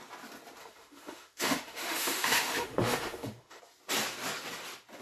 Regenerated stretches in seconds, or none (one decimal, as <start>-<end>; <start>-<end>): 0.6-3.6